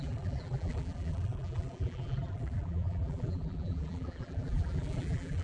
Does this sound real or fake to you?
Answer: fake